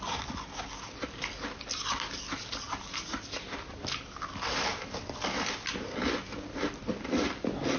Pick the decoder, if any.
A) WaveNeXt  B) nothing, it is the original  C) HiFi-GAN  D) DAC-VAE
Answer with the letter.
B